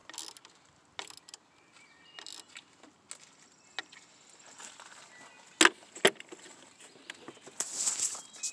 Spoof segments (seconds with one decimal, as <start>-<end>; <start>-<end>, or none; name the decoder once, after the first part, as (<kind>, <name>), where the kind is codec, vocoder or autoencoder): none

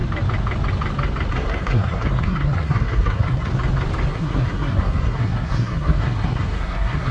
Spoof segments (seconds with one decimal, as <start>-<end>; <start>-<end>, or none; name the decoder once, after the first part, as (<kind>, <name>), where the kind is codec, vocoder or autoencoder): 1.3-3.5 (codec, SNAC); 4.1-7.1

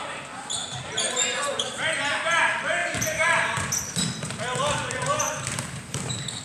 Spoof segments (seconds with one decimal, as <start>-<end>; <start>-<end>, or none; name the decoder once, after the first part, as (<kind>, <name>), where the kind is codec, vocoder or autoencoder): 2.8-6.4 (vocoder, BigVGAN v2)

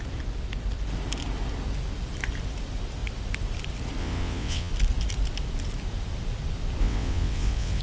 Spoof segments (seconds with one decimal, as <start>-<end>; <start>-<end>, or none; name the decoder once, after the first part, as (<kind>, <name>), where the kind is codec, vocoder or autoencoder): 4.0-4.7 (vocoder, WaveNeXt); 6.8-7.8

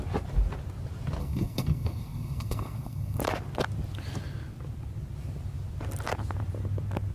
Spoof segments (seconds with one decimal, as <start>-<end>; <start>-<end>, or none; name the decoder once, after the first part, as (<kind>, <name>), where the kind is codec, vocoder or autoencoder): 1.2-3.2 (codec, SNAC)

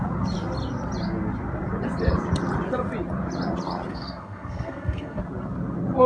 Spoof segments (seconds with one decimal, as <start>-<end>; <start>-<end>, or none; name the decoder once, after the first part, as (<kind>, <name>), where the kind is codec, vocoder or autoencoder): 3.9-5.2 (codec, SNAC)

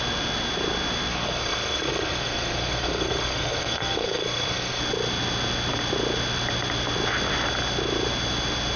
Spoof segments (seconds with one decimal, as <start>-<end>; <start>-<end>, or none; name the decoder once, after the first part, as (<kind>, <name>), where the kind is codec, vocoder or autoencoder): 1.1-4.8 (codec, SNAC)